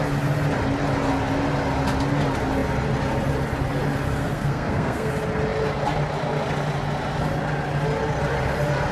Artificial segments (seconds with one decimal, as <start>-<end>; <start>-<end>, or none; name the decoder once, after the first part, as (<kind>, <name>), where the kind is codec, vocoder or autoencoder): 4.2-5.1 (codec, SNAC)